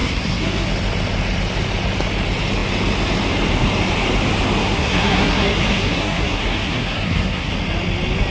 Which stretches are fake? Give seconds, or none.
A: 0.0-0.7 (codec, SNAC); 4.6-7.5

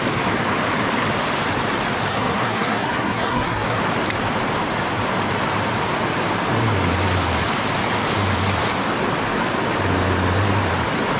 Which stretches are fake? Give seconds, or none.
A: 2.1-3.8 (codec, SNAC)

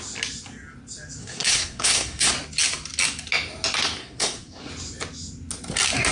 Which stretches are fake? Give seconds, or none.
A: 1.2-2.3 (codec, SNAC); 4.0-4.7

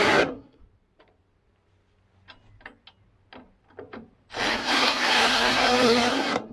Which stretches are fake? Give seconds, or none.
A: 0.0-0.6 (codec, SNAC); 4.5-6.5

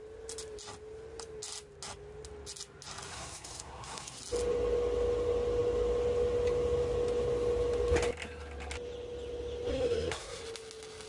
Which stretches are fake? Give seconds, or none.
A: 3.1-4.2 (codec, SNAC); 9.7-10.4

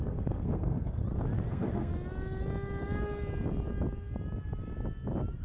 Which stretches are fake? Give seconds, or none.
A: 0.0-1.0 (codec, SNAC); 1.5-1.9

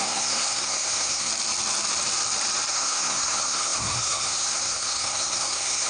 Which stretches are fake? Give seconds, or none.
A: 0.0-1.3 (codec, SNAC); 2.7-5.9